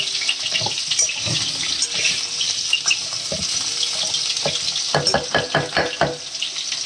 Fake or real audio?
real